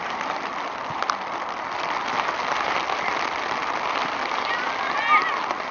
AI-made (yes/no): no